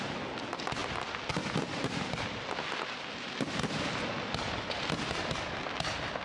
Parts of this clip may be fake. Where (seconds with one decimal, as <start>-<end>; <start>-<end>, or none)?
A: none